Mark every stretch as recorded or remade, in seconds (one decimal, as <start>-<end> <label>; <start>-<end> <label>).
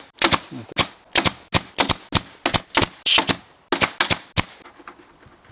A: 0.0-5.5 recorded